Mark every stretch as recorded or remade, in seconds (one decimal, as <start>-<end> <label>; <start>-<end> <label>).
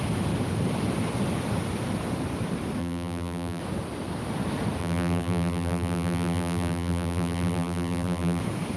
0.0-2.8 recorded; 2.8-3.6 remade; 3.6-4.8 recorded; 4.8-8.4 remade; 8.4-8.8 recorded